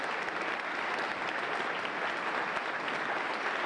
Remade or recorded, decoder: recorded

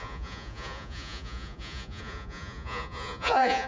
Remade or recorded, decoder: remade, vocoder, Vocos